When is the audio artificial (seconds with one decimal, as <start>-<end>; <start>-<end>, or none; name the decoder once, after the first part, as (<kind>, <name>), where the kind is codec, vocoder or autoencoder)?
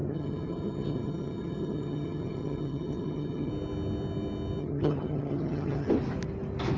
0.0-3.5 (vocoder, HiFi-GAN); 4.6-5.9